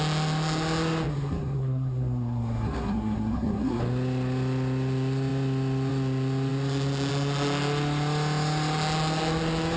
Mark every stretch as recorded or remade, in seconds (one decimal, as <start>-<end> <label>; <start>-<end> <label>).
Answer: 0.0-1.1 recorded; 1.1-3.8 remade; 3.8-9.8 recorded